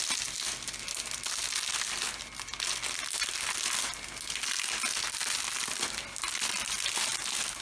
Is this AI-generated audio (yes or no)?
no